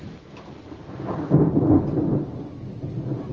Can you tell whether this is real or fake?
real